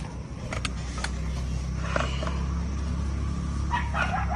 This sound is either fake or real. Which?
real